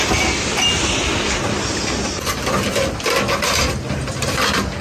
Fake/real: real